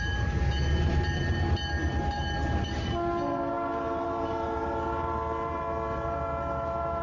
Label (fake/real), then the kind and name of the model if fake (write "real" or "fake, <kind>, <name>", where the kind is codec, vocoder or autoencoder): fake, vocoder, BigVGAN v2